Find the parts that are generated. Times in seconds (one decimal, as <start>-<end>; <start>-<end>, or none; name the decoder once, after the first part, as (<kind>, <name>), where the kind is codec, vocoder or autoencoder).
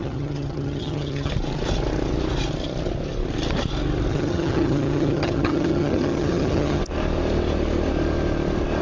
0.0-1.3 (vocoder, HiFi-GAN); 4.1-6.8